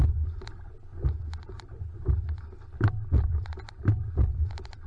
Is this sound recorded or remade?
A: recorded